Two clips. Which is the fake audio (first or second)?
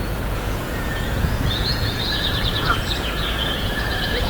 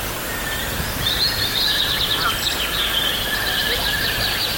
first